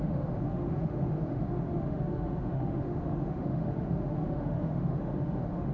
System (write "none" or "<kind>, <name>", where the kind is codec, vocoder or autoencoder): autoencoder, DAC-VAE